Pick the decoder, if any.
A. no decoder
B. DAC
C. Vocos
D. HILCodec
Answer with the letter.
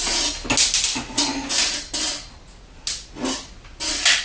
A